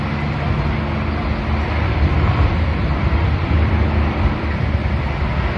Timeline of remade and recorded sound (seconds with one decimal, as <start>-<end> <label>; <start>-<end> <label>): 0.0-2.1 recorded; 2.1-4.5 remade; 4.5-5.6 recorded